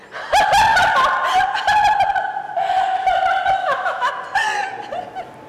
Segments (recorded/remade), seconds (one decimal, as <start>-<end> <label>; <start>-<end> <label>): 0.0-3.6 recorded; 3.6-4.1 remade; 4.1-5.5 recorded